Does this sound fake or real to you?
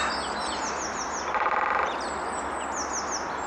real